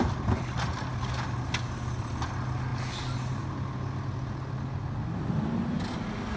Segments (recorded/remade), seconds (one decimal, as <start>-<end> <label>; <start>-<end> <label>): 0.0-6.4 recorded